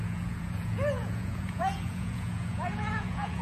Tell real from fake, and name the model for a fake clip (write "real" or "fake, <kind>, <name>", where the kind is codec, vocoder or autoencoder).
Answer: fake, vocoder, Vocos